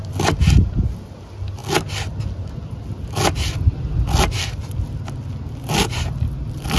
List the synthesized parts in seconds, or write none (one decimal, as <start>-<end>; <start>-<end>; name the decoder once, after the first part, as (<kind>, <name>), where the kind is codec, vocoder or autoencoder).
none